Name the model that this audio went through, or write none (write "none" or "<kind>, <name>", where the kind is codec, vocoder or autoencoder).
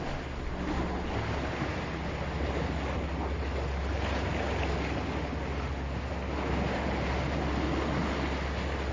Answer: none